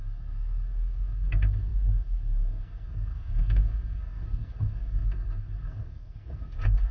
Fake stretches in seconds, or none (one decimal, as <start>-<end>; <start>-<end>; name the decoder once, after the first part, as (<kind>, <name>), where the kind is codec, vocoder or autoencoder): 0.0-6.9 (codec, SNAC)